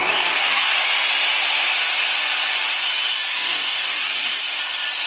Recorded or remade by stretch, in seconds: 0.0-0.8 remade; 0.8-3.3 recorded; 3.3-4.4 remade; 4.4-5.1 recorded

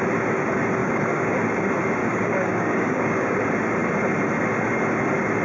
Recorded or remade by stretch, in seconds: 0.0-0.8 recorded; 0.8-1.4 remade; 1.4-2.0 recorded; 2.0-3.4 remade; 3.4-5.4 recorded

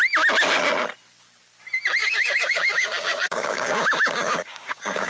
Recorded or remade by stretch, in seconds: 0.0-2.0 recorded; 2.0-5.1 remade

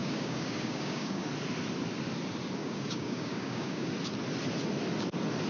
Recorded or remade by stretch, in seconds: 0.0-1.3 remade; 1.3-2.6 recorded; 2.6-3.9 remade; 3.9-5.5 recorded

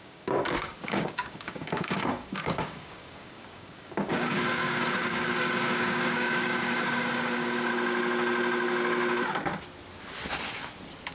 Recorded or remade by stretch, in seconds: 0.0-7.7 remade; 7.7-11.1 recorded

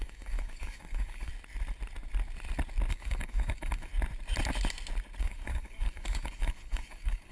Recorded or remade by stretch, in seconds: 0.0-1.3 remade; 1.3-2.9 recorded; 2.9-3.9 remade; 3.9-5.2 recorded; 5.2-7.3 remade

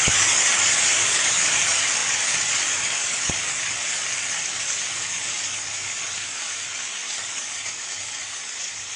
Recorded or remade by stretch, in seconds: 0.0-9.0 remade